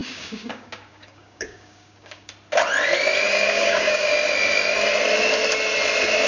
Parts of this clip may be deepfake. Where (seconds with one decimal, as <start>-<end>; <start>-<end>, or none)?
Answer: 0.0-2.3; 3.3-4.1